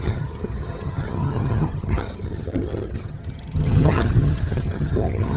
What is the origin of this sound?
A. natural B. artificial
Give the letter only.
B